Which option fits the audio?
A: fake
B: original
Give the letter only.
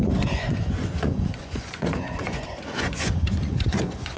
A